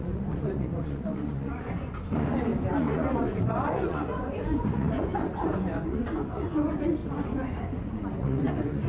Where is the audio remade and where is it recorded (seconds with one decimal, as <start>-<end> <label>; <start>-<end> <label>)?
0.0-8.9 remade